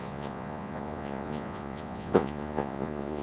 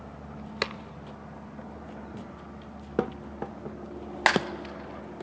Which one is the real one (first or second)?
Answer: second